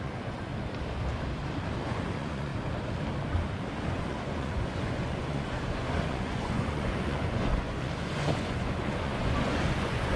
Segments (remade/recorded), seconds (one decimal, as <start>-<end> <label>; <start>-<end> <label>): 0.0-0.5 remade; 0.5-1.8 recorded; 1.8-2.5 remade; 2.5-3.9 recorded; 3.9-10.2 remade